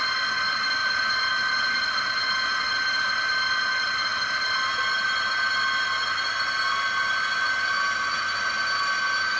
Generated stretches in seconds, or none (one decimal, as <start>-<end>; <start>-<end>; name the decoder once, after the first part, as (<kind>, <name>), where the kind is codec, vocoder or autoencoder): none